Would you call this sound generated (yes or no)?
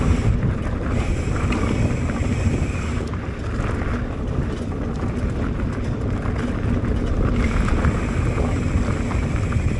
no